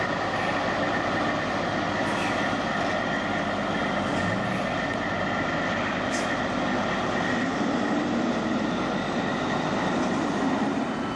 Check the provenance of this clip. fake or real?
real